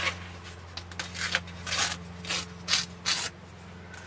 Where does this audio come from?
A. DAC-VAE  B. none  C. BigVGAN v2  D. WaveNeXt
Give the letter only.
B